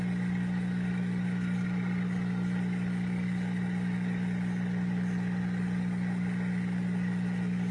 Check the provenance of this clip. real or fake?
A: real